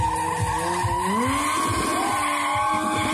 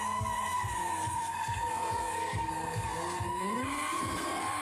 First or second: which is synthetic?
second